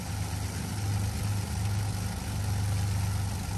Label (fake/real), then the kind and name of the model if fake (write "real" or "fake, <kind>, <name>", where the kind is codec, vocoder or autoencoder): real